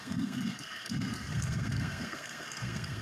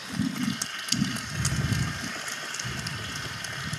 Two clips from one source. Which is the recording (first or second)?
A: second